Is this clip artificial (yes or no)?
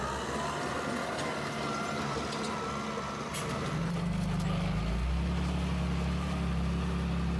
no